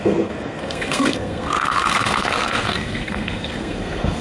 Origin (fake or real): fake